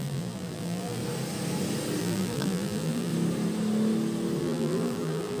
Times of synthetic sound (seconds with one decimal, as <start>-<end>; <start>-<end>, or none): 0.0-1.0; 2.0-3.1; 4.4-5.4